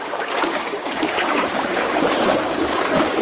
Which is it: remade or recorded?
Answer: remade